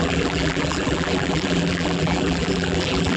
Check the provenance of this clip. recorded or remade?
remade